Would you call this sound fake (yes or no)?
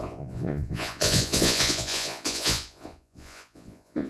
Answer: yes